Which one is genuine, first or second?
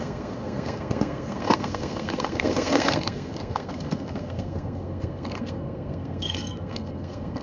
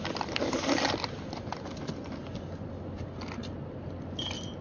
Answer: second